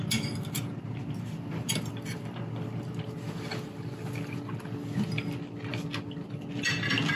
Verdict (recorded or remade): recorded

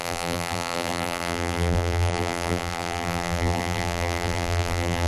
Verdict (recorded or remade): remade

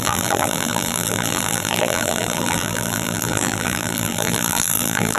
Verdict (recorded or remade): remade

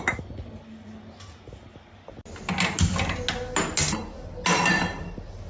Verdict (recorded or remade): recorded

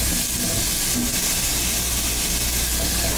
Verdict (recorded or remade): recorded